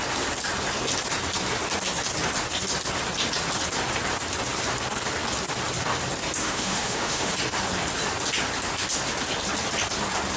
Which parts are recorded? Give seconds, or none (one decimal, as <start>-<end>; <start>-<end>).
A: 0.0-6.4; 7.3-10.4